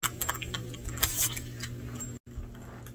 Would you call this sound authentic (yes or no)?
yes